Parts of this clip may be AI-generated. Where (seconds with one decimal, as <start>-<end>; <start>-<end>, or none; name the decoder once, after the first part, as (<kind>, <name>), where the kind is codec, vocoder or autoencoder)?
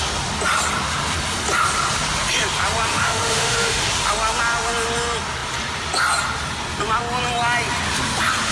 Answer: 2.9-3.8 (autoencoder, DAC-VAE)